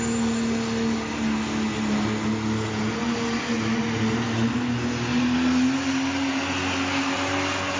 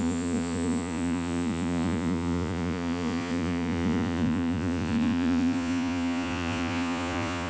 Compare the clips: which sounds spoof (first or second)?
second